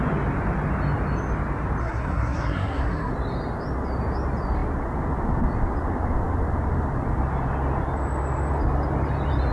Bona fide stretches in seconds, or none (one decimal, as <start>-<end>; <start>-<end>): 0.0-1.8; 3.1-9.5